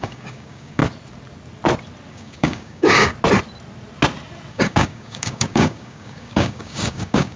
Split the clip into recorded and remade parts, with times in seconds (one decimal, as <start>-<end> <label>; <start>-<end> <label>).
0.0-0.8 remade; 0.8-2.1 recorded; 2.1-3.1 remade; 3.1-4.5 recorded; 4.5-7.4 remade